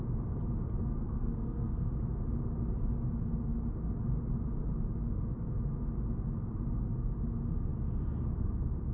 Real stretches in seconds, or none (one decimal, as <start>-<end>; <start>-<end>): 0.0-0.9; 1.9-8.9